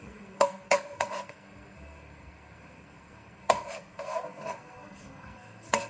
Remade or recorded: remade